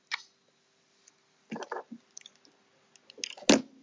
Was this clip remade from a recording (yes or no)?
no